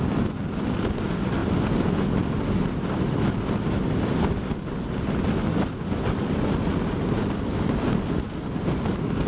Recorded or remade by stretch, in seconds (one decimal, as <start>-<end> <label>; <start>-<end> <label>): 0.0-9.3 recorded